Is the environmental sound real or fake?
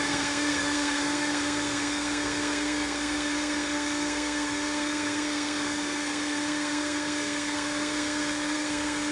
fake